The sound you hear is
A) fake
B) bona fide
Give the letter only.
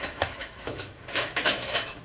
A